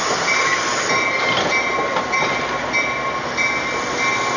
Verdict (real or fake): real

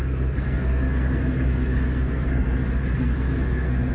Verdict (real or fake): fake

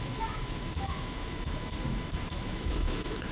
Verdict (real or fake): fake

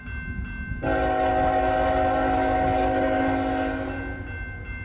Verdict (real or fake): real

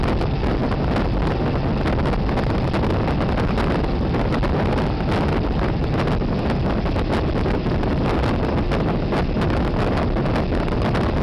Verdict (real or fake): real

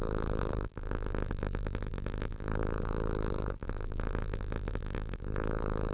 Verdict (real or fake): fake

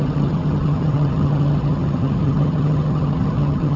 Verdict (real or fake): fake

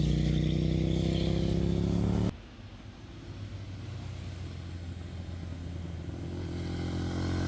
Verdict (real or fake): real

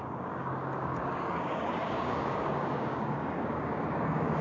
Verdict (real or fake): fake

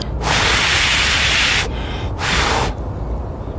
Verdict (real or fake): real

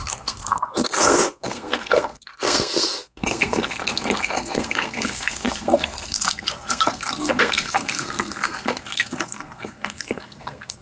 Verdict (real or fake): fake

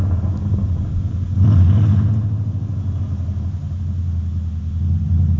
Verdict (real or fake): real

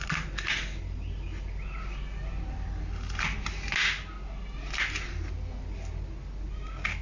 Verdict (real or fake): real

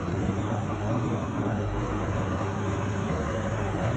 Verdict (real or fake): fake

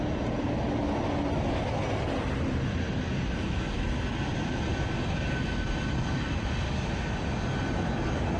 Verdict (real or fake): real